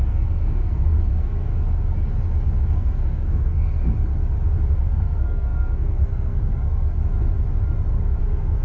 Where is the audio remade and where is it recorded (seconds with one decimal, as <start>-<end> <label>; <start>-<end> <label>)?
0.0-1.5 remade; 1.5-2.7 recorded; 2.7-4.1 remade; 4.1-4.8 recorded; 4.8-7.0 remade; 7.0-8.2 recorded; 8.2-8.6 remade